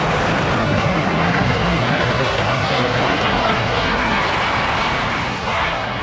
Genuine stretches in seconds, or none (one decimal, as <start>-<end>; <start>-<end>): 0.0-0.6; 4.2-5.3